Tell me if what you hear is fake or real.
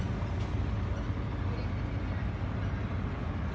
real